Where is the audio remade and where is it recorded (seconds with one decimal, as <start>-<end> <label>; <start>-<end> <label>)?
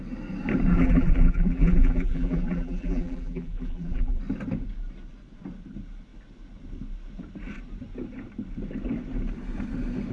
0.0-0.7 recorded; 0.7-4.2 remade; 4.2-10.1 recorded